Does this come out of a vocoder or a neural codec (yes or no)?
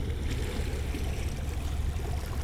no